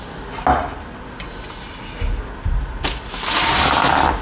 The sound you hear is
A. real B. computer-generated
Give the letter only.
A